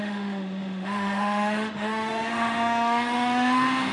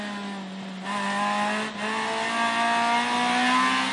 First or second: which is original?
second